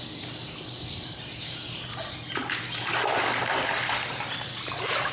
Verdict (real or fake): real